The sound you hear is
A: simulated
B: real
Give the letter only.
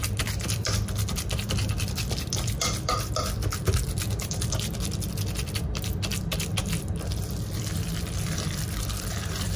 A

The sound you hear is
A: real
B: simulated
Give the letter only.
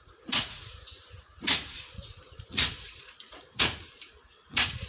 B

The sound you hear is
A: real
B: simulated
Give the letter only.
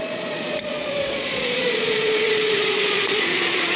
B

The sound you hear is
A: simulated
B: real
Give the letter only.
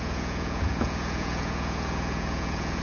A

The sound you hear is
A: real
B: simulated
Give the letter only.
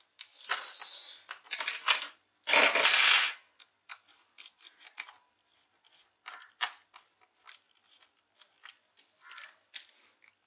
A